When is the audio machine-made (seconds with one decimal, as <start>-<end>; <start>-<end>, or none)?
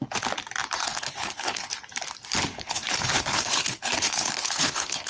0.8-1.7; 2.5-5.1